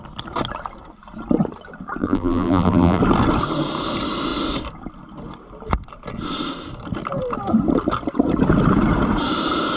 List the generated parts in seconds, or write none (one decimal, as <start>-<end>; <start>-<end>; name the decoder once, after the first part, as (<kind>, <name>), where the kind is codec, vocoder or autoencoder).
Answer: 2.0-3.0 (vocoder, BigVGAN v2)

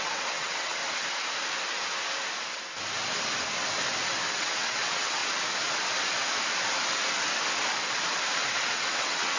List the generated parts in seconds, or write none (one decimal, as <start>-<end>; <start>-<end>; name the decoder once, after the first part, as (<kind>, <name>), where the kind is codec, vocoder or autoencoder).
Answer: 0.0-0.8 (vocoder, WaveNeXt); 4.3-5.2; 8.5-9.4

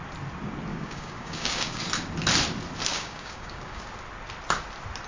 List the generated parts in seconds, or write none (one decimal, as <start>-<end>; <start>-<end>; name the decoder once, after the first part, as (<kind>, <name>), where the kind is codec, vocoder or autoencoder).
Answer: 0.7-1.8 (codec, DAC); 2.9-3.8

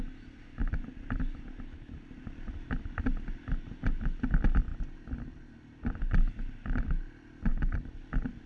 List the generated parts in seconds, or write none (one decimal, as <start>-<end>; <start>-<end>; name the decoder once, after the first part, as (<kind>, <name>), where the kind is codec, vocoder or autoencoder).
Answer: none

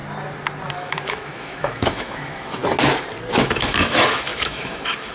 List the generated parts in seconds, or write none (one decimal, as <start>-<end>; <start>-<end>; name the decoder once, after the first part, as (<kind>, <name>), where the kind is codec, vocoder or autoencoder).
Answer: 0.7-2.6 (autoencoder, DAC-VAE); 3.3-5.1